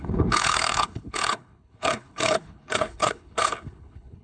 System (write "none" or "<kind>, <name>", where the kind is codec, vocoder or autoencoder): codec, HILCodec